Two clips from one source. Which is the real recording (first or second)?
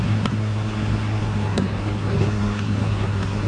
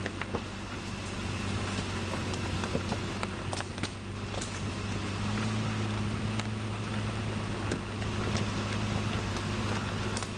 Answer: second